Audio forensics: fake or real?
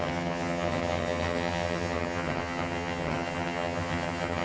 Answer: fake